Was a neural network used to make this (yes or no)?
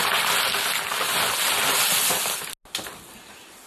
no